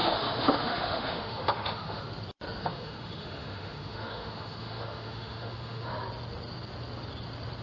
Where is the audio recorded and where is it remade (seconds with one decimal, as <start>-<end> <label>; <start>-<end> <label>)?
0.0-2.0 remade; 2.0-2.6 recorded; 2.6-5.9 remade; 5.9-7.6 recorded